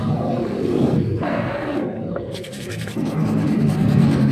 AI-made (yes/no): yes